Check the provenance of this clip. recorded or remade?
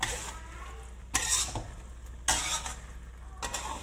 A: recorded